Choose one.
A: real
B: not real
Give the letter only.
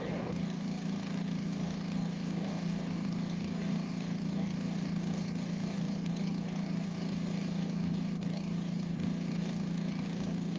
B